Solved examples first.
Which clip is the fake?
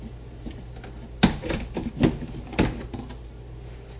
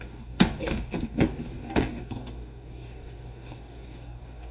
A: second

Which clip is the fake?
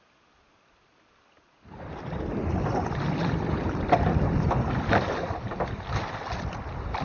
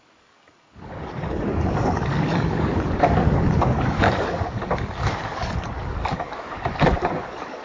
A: second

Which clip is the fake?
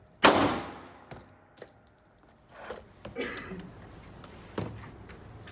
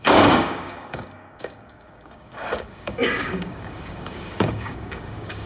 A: second